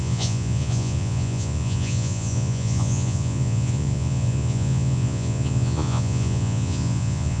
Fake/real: fake